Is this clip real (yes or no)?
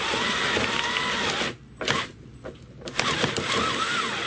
yes